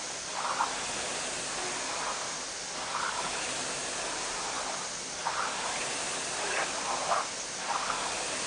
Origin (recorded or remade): recorded